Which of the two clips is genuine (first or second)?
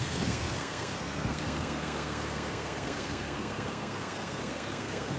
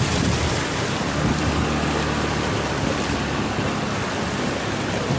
second